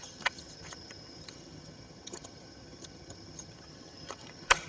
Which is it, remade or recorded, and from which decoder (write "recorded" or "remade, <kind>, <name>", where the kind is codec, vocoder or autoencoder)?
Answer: remade, vocoder, HiFi-GAN